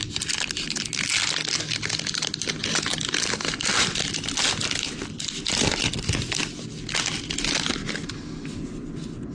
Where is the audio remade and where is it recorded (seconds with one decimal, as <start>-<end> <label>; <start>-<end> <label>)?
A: 0.0-9.3 recorded